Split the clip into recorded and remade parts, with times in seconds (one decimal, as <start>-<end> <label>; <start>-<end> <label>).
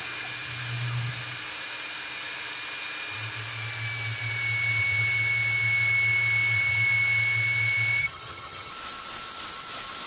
0.0-8.0 recorded; 8.0-8.7 remade; 8.7-10.1 recorded